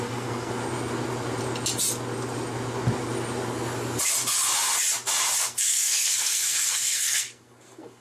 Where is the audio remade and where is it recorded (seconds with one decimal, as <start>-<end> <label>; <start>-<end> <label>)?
0.0-0.6 remade; 0.6-5.4 recorded; 5.4-8.0 remade